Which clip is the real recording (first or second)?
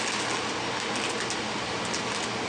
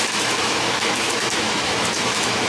first